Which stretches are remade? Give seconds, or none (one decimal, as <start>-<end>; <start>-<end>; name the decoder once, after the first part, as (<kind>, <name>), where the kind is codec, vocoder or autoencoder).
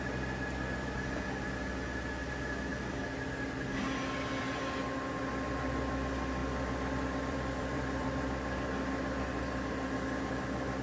6.4-8.3 (vocoder, BigVGAN v2)